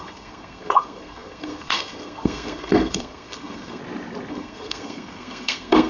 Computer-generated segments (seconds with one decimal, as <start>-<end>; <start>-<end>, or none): 0.0-3.8; 4.3-5.9